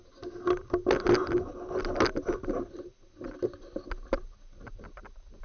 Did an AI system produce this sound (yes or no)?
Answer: no